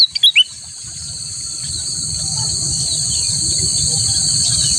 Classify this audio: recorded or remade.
recorded